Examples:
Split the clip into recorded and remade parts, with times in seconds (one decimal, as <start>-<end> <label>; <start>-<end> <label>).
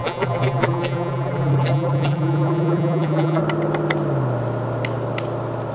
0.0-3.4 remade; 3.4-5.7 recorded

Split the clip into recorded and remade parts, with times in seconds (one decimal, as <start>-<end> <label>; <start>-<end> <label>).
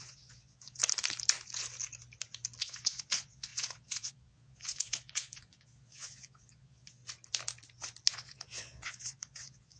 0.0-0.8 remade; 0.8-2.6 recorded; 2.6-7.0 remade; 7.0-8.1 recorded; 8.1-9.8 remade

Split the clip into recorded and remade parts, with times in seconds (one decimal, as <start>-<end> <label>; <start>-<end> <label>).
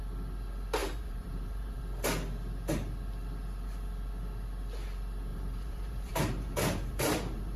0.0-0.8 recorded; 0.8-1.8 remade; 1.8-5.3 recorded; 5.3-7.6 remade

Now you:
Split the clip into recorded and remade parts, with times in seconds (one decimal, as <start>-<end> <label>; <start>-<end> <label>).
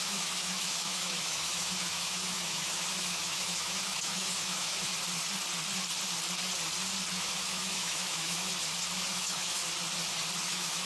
0.0-4.9 remade; 4.9-7.1 recorded; 7.1-8.5 remade; 8.5-9.1 recorded; 9.1-9.6 remade; 9.6-10.4 recorded; 10.4-10.9 remade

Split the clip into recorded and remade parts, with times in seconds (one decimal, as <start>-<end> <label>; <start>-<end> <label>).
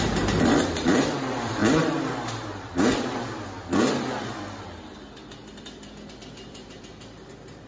0.0-7.7 remade